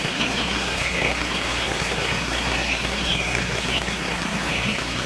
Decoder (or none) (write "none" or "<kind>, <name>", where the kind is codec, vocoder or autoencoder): codec, SNAC